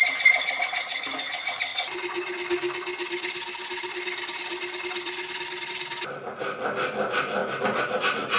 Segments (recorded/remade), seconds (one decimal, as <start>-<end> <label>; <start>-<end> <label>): 0.0-8.4 recorded